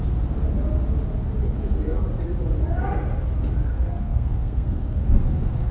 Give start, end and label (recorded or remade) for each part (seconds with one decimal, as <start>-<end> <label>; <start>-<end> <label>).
0.0-1.4 recorded; 1.4-2.0 remade; 2.0-3.7 recorded; 3.7-5.7 remade